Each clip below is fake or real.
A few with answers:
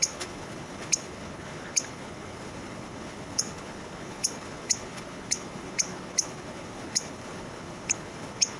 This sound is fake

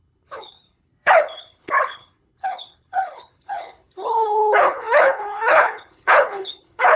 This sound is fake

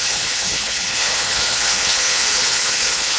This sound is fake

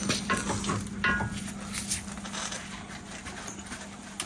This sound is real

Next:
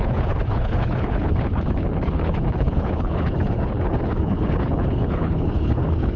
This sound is fake